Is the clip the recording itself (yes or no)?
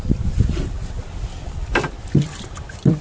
no